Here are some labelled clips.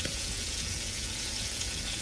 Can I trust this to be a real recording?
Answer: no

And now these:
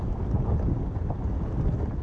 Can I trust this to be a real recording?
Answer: yes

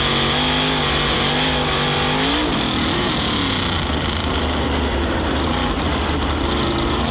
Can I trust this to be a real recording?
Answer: yes